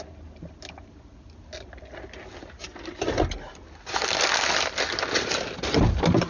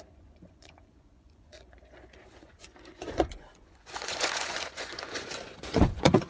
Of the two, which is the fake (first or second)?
second